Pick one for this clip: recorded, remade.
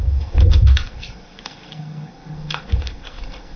remade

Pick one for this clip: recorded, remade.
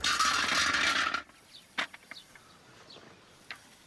recorded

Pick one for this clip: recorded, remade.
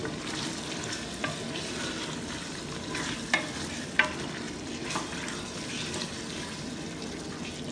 recorded